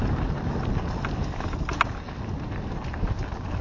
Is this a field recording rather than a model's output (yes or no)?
yes